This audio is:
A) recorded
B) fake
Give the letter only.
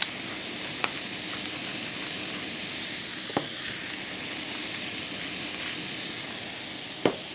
A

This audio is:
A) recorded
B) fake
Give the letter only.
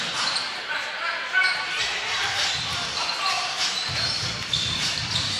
B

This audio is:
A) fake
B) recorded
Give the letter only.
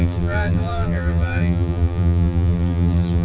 A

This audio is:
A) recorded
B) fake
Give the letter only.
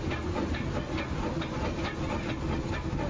A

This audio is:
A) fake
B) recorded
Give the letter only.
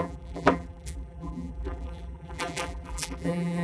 A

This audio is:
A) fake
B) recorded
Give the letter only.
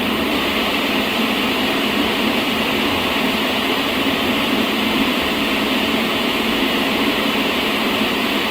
A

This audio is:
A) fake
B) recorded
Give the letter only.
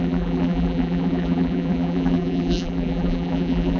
A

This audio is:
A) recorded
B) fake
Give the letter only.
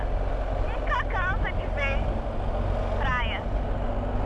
A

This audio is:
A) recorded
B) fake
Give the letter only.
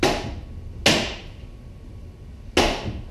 A